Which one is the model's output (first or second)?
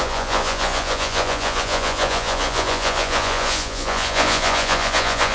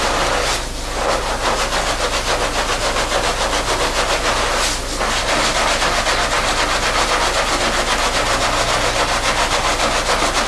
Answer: first